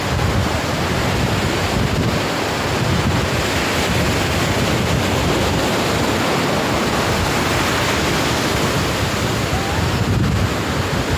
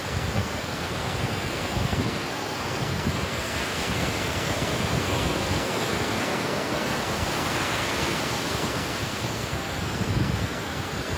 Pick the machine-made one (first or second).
second